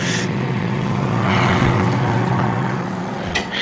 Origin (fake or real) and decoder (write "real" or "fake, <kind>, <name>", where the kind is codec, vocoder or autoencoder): fake, vocoder, WaveNeXt